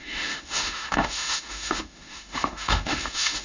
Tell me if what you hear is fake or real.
fake